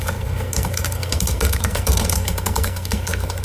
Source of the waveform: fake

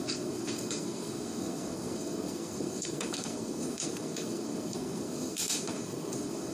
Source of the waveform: fake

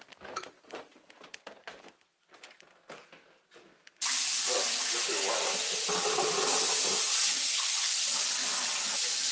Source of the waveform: real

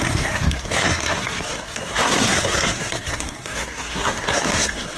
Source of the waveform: fake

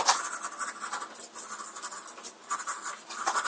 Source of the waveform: real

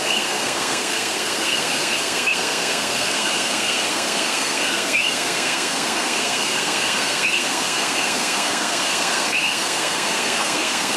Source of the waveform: fake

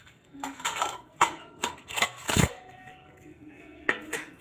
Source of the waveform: fake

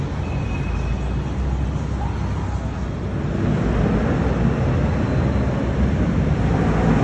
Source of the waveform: real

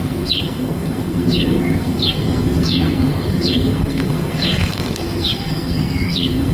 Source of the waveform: fake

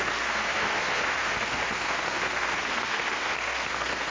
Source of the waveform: fake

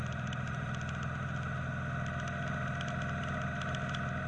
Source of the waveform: real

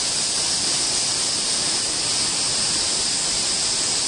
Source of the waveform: real